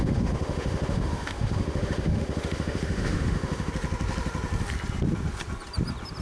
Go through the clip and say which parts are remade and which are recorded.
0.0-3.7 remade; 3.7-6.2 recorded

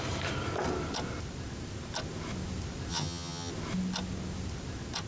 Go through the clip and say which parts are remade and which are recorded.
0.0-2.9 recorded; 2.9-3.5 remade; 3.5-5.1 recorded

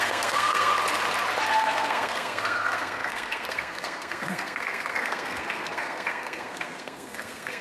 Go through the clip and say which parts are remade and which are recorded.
0.0-0.7 remade; 0.7-1.4 recorded; 1.4-7.6 remade

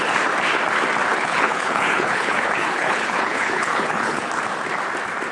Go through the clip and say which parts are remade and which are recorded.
0.0-1.1 recorded; 1.1-4.3 remade; 4.3-5.3 recorded

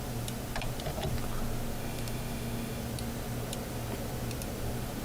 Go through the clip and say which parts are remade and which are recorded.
0.0-1.8 recorded; 1.8-2.8 remade; 2.8-5.0 recorded